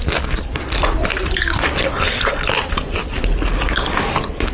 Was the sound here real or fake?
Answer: fake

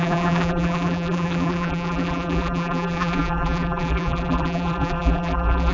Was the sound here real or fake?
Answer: fake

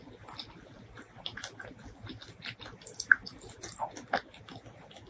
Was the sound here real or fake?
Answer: real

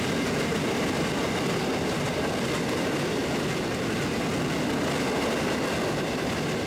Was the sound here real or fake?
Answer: real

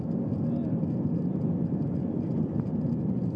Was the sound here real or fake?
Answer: real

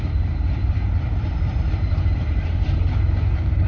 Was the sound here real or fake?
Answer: fake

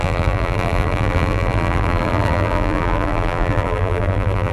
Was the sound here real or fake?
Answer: fake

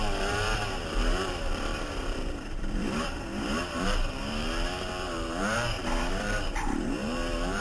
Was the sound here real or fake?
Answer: fake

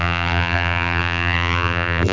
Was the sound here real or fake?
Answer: fake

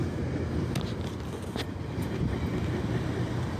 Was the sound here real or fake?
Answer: real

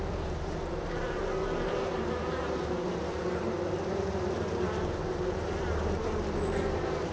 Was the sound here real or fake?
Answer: fake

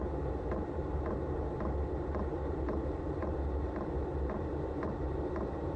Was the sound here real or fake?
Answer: fake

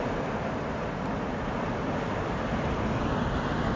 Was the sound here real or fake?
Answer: real